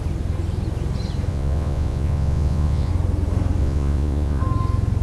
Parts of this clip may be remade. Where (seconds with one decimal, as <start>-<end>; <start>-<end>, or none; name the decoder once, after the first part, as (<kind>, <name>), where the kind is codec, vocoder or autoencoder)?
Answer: 1.3-2.9 (vocoder, Vocos); 3.6-4.4

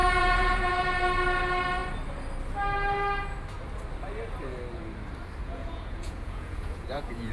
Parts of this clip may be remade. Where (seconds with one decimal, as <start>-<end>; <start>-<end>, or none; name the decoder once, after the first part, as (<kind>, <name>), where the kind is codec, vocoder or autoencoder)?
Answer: 0.0-0.7 (vocoder, Vocos); 5.4-7.3

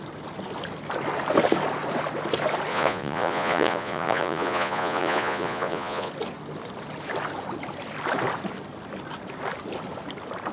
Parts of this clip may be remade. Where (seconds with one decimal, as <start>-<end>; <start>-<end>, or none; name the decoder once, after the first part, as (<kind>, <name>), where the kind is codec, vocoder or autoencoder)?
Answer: 2.7-6.1 (vocoder, Vocos)

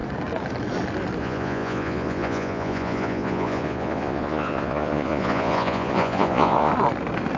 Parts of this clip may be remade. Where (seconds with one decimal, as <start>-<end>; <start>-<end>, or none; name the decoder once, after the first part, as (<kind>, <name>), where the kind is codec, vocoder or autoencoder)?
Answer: 1.2-6.7 (vocoder, Vocos)

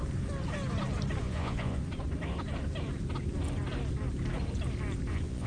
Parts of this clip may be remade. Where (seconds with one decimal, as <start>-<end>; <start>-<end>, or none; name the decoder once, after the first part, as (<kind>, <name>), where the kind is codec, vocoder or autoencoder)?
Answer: 1.2-1.8 (vocoder, Vocos); 5.1-5.5

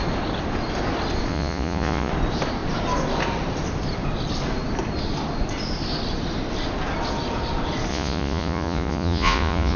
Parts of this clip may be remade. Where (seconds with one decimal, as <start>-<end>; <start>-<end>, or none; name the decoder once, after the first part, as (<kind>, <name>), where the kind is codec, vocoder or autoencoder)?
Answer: 1.3-2.1 (vocoder, Vocos); 7.9-9.8